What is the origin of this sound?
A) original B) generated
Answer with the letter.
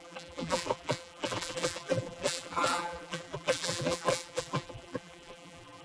B